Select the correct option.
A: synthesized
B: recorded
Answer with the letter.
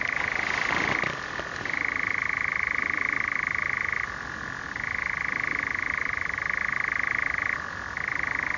B